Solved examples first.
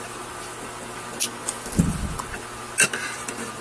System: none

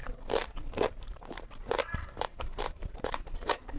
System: vocoder, BigVGAN v2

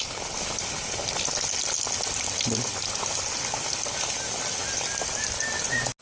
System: none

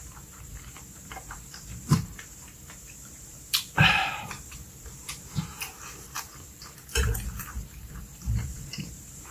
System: vocoder, BigVGAN v2